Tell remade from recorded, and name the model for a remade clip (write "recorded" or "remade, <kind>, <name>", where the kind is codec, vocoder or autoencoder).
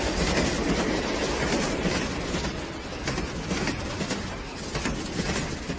recorded